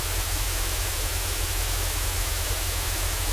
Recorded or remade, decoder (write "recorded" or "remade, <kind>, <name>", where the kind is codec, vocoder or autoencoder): remade, autoencoder, DAC-VAE